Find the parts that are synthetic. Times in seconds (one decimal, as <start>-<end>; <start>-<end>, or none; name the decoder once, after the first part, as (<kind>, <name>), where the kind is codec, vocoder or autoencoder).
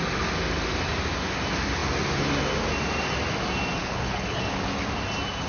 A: 3.8-4.4 (codec, HILCodec)